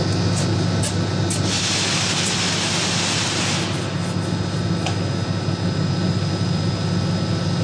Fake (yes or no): no